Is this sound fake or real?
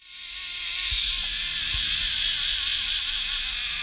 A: real